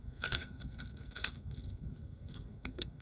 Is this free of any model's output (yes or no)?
no